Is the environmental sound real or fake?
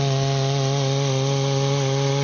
real